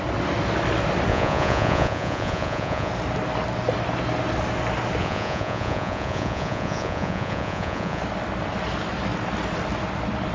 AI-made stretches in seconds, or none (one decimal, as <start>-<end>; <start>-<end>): 1.1-2.9; 5.0-8.0